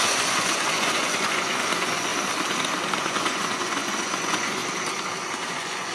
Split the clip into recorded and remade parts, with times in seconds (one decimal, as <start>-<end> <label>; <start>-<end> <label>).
0.0-2.1 remade; 2.1-3.0 recorded; 3.0-4.6 remade; 4.6-5.5 recorded; 5.5-5.9 remade